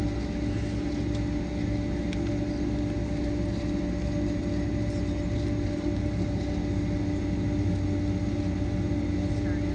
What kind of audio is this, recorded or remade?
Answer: recorded